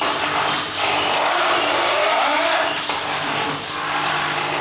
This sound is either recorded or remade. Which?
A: recorded